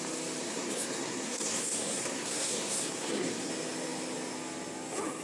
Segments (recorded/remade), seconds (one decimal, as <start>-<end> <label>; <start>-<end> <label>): 0.0-0.4 recorded; 0.4-3.5 remade; 3.5-5.2 recorded